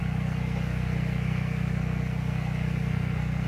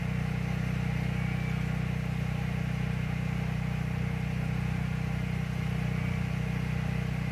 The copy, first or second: first